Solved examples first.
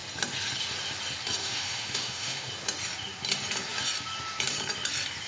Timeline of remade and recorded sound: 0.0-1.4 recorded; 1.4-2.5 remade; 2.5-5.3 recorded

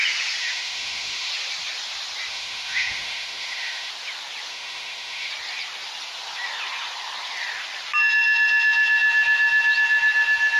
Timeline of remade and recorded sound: 0.0-0.4 recorded; 0.4-1.3 remade; 1.3-2.3 recorded; 2.3-3.9 remade; 3.9-4.5 recorded; 4.5-5.3 remade; 5.3-10.6 recorded

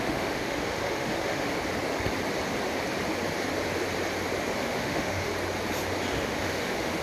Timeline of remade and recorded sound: 0.0-1.5 remade; 1.5-4.5 recorded; 4.5-5.3 remade; 5.3-6.1 recorded; 6.1-7.0 remade